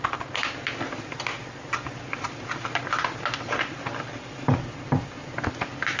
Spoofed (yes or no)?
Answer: no